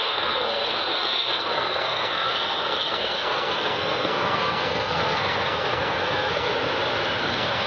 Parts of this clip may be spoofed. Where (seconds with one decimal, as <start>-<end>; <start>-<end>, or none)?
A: 0.0-6.5; 7.2-7.7